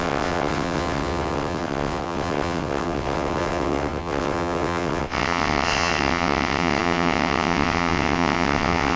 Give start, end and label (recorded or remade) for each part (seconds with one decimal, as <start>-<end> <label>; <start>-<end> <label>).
0.0-9.0 remade